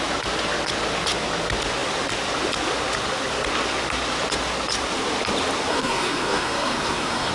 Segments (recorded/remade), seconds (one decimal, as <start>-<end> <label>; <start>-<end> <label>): 0.0-5.7 recorded; 5.7-7.3 remade